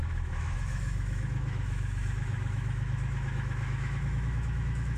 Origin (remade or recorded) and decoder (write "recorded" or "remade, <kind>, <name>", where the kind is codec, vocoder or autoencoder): remade, autoencoder, DAC-VAE